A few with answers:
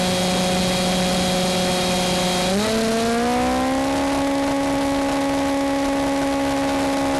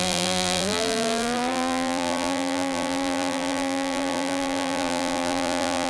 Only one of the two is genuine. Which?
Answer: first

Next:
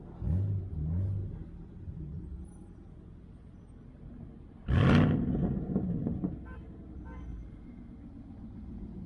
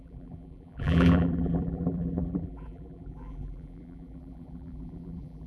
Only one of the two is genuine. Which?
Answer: first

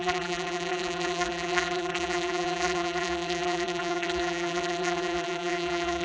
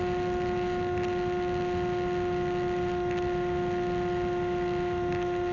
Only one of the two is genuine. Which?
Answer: second